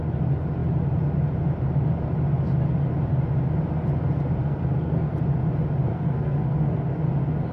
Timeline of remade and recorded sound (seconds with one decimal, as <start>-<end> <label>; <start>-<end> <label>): 0.0-4.4 recorded; 4.4-5.2 remade; 5.2-5.9 recorded; 5.9-7.0 remade; 7.0-7.5 recorded